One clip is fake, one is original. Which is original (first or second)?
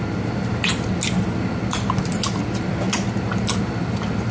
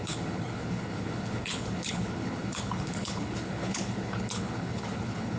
first